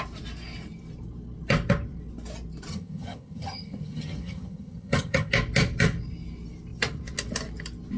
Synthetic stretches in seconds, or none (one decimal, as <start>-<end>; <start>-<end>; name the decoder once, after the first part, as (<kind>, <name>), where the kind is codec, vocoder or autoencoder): 2.7-5.3 (vocoder, HiFi-GAN)